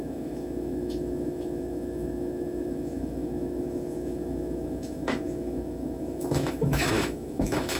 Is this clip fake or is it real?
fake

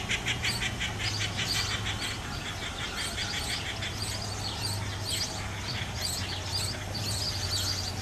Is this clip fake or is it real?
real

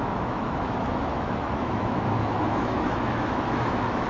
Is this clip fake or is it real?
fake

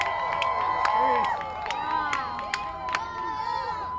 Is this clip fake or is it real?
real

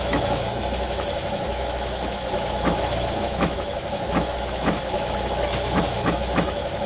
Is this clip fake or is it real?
fake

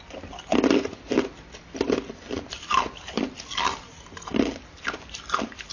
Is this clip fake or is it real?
real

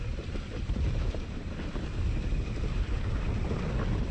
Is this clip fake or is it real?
real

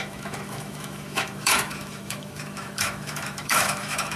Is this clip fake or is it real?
fake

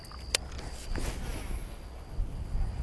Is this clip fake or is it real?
real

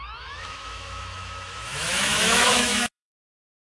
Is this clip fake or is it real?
fake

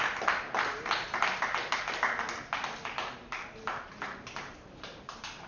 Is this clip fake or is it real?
real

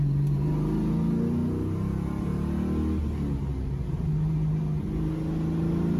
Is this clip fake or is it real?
real